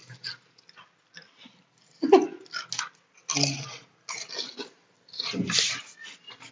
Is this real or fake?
real